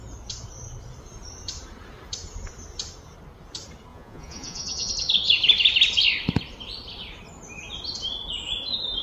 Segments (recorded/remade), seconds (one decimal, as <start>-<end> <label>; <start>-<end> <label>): 0.0-3.9 recorded; 3.9-4.9 remade; 4.9-9.0 recorded